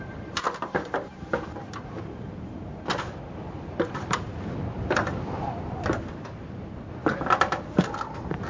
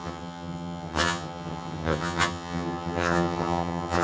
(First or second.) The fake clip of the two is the second